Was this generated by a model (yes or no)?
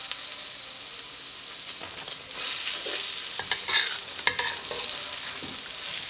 no